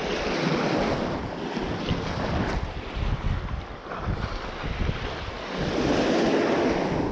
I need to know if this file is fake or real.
real